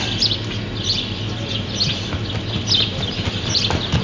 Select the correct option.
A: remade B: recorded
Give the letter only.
B